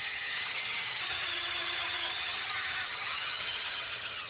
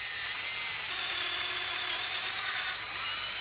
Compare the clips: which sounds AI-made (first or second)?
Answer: first